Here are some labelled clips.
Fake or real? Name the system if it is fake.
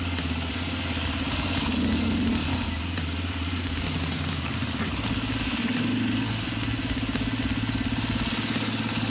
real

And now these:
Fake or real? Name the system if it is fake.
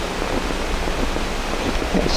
real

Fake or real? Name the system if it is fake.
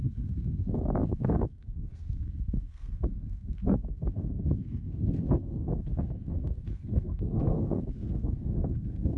fake, codec, SNAC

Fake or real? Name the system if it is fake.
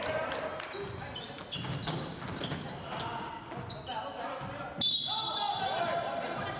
real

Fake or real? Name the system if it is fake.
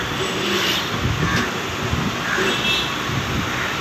real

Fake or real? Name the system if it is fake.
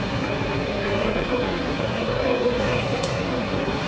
fake, codec, SNAC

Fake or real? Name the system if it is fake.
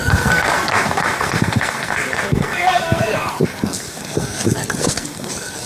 fake, codec, SNAC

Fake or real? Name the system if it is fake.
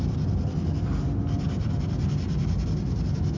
real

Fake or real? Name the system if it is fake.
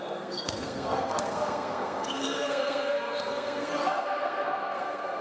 fake, codec, SNAC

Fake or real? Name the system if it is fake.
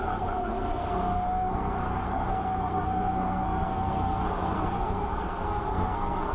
fake, codec, SNAC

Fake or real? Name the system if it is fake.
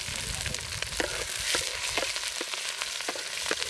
real